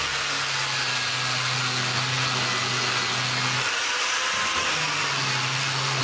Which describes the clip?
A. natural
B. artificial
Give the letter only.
A